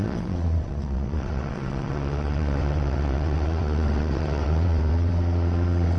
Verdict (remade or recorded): remade